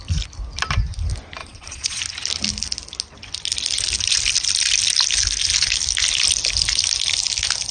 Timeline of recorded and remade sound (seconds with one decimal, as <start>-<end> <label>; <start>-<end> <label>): 0.0-1.4 recorded; 1.4-2.0 remade; 2.0-7.7 recorded